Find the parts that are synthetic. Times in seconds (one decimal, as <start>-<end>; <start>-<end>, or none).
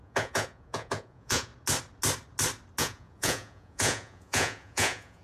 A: 0.0-1.5; 2.8-5.2